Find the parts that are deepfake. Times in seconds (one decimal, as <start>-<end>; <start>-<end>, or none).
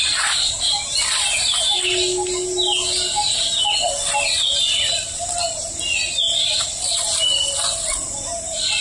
0.0-0.6